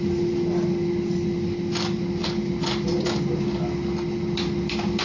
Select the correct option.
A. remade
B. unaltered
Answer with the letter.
B